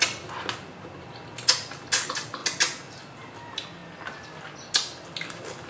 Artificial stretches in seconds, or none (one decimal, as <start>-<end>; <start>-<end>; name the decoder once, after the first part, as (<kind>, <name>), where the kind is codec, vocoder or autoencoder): none